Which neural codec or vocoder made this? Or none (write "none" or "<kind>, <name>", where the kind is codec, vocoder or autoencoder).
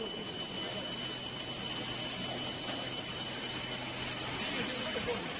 none